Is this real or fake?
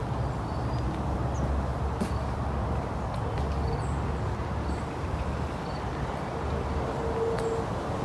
real